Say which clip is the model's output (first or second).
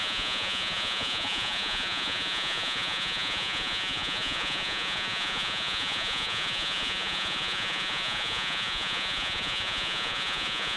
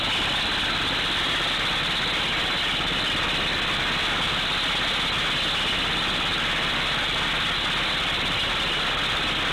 first